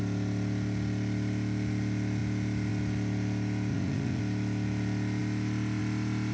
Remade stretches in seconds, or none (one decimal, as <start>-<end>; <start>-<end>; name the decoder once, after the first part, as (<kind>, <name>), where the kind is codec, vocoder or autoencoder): 3.7-4.2 (vocoder, Vocos)